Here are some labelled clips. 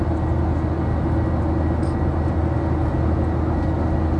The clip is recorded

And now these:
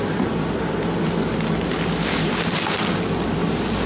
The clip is recorded